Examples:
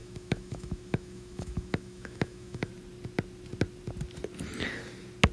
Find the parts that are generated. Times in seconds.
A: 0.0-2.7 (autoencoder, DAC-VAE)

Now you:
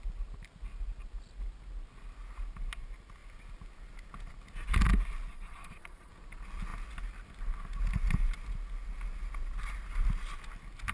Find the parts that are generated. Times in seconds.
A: 5.3-6.1 (vocoder, Vocos)

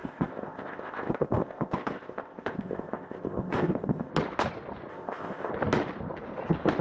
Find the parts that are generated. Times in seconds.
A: 0.0-4.1 (codec, ZipCodec); 4.9-5.5

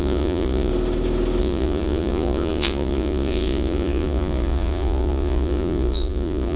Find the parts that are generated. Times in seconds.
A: 0.0-0.7 (vocoder, Vocos); 1.4-6.6